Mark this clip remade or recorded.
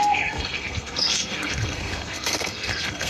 remade